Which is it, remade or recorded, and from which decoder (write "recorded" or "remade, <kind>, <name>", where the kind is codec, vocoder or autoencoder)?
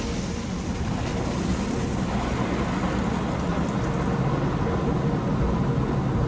recorded